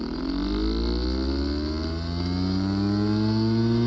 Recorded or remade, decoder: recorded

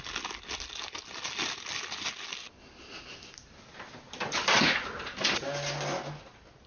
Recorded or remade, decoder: recorded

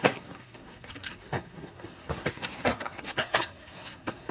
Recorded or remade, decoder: remade, codec, SNAC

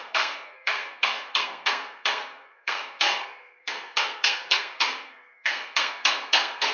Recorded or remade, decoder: remade, codec, SNAC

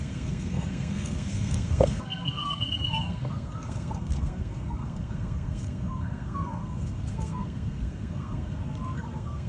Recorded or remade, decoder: remade, codec, SNAC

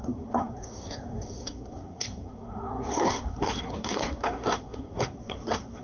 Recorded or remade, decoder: remade, codec, SNAC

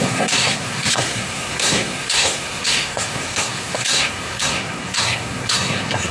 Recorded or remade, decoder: remade, codec, SNAC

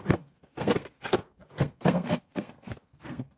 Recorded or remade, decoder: remade, codec, SNAC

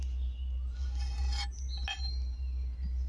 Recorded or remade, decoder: recorded